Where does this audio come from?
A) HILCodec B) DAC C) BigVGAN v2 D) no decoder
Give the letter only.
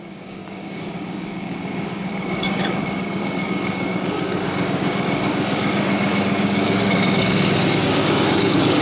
B